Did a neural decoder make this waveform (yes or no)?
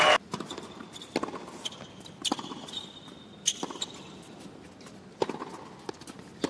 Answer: no